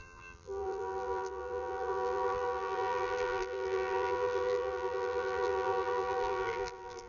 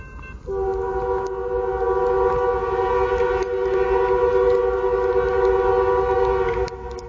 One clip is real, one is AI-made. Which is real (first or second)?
second